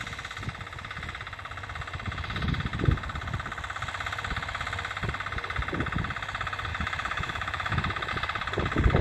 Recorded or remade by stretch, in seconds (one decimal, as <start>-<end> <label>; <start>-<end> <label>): 0.0-6.7 recorded; 6.7-8.1 remade; 8.1-9.0 recorded